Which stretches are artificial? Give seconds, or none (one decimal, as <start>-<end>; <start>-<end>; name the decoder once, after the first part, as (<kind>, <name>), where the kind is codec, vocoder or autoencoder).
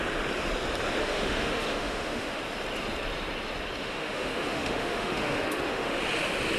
1.0-2.4 (autoencoder, DAC-VAE); 3.8-6.0